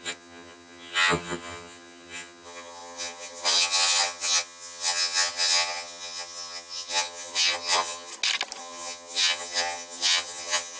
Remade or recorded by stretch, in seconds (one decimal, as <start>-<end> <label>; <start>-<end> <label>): 0.0-8.1 remade; 8.1-8.6 recorded; 8.6-10.8 remade